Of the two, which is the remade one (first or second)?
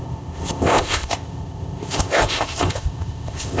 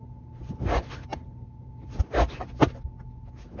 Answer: first